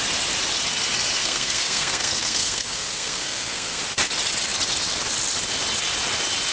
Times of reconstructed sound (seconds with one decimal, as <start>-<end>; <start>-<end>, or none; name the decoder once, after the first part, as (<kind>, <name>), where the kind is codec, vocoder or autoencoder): 1.2-3.8 (codec, SNAC)